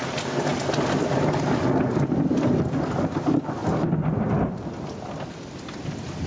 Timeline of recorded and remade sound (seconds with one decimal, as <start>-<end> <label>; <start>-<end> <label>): 0.0-6.3 recorded